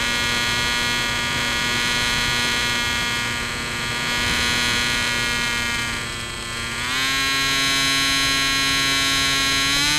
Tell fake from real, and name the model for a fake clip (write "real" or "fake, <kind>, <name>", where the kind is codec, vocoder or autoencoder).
real